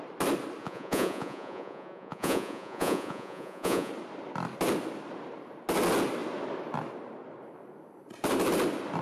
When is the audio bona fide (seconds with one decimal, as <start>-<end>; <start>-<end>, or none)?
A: 0.0-0.6; 3.9-9.0

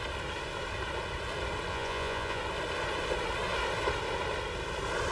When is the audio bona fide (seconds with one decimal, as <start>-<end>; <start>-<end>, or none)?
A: 0.0-1.7; 2.4-5.1

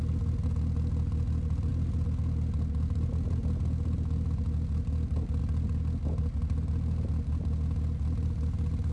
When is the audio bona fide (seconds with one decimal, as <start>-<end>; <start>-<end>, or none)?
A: 0.0-8.9